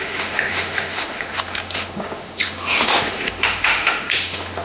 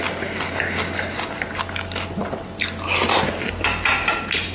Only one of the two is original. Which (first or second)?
second